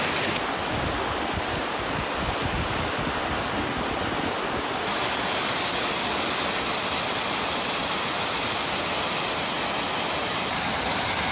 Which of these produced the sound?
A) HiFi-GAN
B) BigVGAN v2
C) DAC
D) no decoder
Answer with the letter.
D